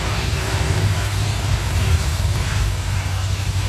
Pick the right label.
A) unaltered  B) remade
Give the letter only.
B